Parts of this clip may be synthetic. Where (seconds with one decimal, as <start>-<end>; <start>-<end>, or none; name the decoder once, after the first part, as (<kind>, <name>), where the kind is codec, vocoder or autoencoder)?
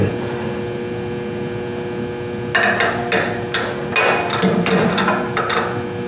none